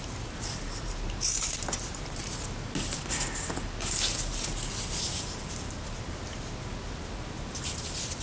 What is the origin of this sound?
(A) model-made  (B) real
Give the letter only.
B